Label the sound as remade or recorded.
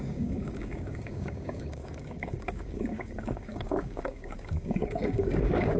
remade